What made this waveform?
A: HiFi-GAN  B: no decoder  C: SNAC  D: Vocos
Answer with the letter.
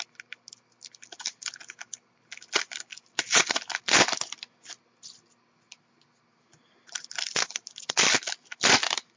B